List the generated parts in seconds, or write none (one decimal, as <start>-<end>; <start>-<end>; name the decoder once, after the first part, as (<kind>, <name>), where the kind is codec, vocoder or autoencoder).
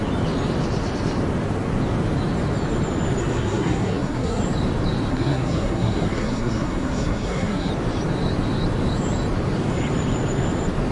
3.2-4.4 (codec, SNAC); 5.1-7.7